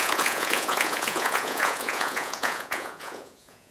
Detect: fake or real fake